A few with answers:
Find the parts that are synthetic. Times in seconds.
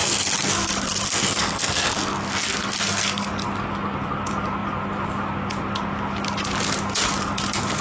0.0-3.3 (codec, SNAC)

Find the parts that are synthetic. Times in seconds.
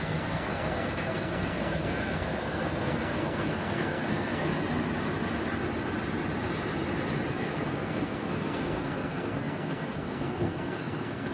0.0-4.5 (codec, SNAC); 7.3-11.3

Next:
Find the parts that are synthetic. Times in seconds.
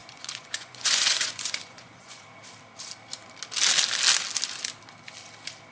0.0-2.2 (vocoder, Vocos)